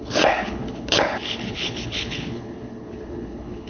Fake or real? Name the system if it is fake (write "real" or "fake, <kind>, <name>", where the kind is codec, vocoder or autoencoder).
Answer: fake, codec, HILCodec